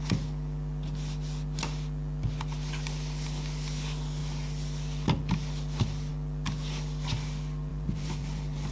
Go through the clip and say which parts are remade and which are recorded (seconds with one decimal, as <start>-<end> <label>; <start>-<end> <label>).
0.0-7.7 recorded; 7.7-8.7 remade